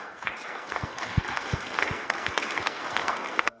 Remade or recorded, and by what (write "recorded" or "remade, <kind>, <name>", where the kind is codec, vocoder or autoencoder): remade, codec, SNAC